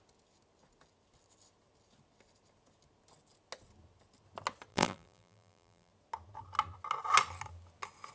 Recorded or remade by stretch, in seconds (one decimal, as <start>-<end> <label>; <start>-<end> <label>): 0.0-4.7 recorded; 4.7-5.9 remade; 5.9-8.1 recorded